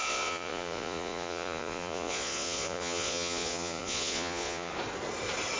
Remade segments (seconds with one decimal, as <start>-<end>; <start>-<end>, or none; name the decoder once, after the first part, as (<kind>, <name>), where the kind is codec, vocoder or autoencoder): 0.0-4.7 (vocoder, Vocos)